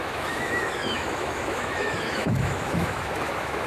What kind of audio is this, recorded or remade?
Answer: remade